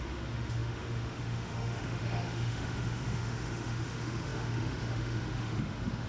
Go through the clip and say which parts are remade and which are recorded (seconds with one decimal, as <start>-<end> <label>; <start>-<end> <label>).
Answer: 0.0-6.1 remade